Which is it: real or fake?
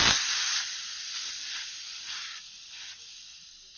fake